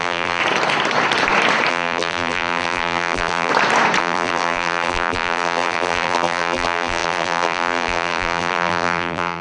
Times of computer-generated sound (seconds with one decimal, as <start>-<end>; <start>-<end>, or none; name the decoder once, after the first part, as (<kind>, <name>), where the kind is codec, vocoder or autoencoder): 0.0-0.4 (vocoder, BigVGAN v2); 1.7-3.5; 4.0-9.4